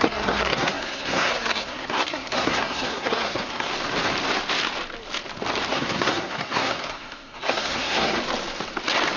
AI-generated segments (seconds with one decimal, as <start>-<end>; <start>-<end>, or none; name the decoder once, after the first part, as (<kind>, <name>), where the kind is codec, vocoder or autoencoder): 0.0-3.7 (codec, SNAC); 5.7-8.2